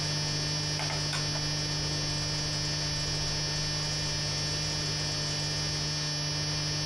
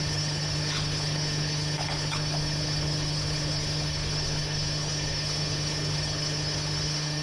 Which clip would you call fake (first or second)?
second